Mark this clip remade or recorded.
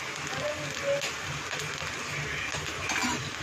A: recorded